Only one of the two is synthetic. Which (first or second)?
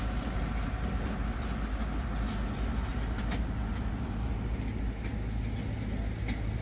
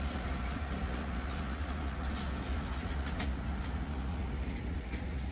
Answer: second